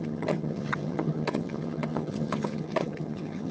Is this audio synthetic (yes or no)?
yes